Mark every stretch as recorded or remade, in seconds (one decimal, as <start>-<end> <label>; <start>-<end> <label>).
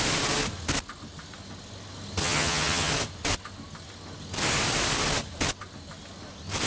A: 0.0-2.2 recorded; 2.2-2.9 remade; 2.9-6.7 recorded